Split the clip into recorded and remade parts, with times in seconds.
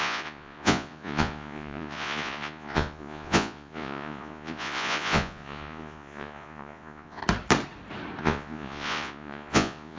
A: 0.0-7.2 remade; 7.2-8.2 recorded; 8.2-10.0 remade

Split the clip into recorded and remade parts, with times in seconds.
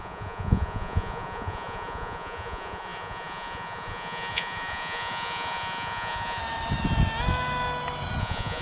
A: 0.0-6.4 remade; 6.4-8.2 recorded; 8.2-8.6 remade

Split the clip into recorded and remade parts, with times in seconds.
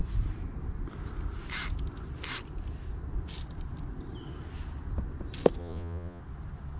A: 0.0-5.6 recorded; 5.6-6.2 remade; 6.2-6.8 recorded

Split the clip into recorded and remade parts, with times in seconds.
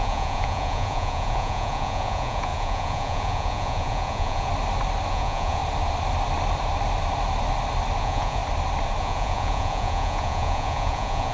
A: 0.0-4.5 remade; 4.5-5.1 recorded; 5.1-5.6 remade; 5.6-8.0 recorded; 8.0-8.4 remade; 8.4-9.0 recorded; 9.0-11.3 remade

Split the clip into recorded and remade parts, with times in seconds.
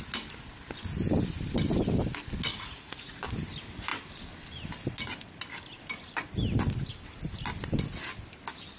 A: 0.0-2.5 recorded; 2.5-3.2 remade; 3.2-8.8 recorded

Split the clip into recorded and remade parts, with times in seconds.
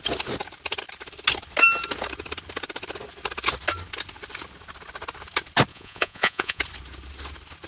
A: 0.0-5.7 recorded; 5.7-6.6 remade; 6.6-7.7 recorded